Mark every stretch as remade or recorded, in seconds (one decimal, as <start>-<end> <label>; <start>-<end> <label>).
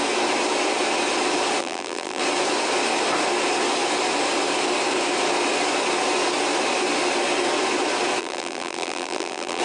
0.0-1.6 recorded; 1.6-2.2 remade; 2.2-8.2 recorded; 8.2-9.6 remade